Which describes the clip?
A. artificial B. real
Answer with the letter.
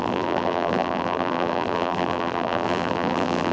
A